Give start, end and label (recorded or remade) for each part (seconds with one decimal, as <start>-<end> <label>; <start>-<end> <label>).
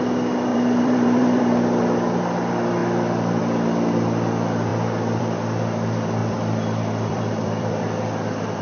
0.0-0.5 recorded; 0.5-1.4 remade; 1.4-6.2 recorded; 6.2-8.6 remade